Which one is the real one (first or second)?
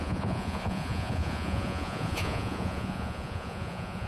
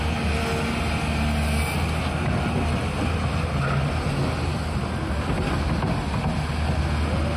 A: second